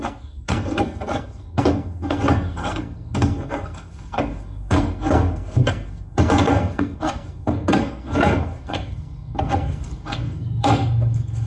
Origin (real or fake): fake